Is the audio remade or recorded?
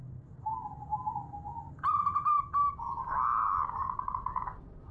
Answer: recorded